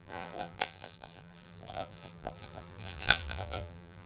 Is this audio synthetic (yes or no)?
yes